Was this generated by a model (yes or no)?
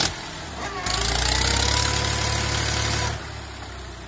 no